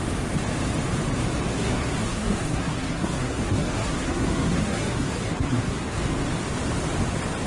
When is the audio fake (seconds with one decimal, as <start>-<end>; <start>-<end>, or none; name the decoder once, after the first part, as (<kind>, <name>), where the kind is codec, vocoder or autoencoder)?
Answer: 1.5-6.0 (codec, SNAC)